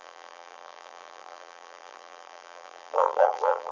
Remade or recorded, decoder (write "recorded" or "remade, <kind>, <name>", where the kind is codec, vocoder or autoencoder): remade, vocoder, BigVGAN v2